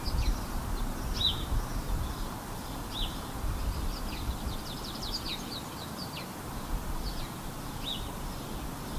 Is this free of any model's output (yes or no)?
no